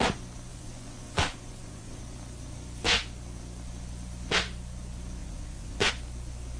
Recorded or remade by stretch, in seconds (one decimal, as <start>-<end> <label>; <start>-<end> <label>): 0.0-0.5 recorded; 0.5-2.0 remade; 2.0-5.2 recorded; 5.2-5.9 remade; 5.9-6.6 recorded